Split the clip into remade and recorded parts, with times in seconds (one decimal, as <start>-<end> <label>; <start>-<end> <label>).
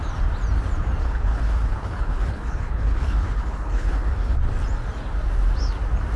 0.0-1.0 recorded; 1.0-4.4 remade; 4.4-6.2 recorded